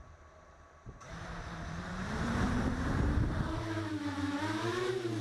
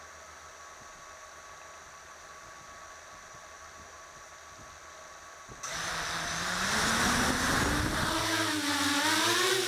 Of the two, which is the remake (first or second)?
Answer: first